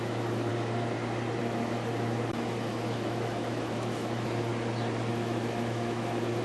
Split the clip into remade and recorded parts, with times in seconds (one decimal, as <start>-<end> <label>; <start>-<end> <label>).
0.0-0.5 remade; 0.5-1.4 recorded; 1.4-4.5 remade; 4.5-5.1 recorded; 5.1-6.4 remade